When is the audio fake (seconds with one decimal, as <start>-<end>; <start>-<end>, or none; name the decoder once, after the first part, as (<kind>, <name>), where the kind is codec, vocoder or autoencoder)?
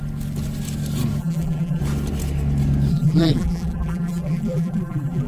1.2-1.8 (vocoder, BigVGAN v2); 2.9-5.3